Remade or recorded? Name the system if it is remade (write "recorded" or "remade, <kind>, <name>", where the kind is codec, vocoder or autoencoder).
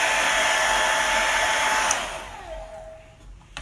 recorded